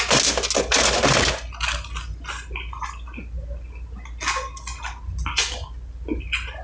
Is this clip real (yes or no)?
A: yes